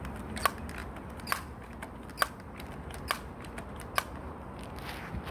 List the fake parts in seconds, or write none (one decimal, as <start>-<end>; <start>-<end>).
none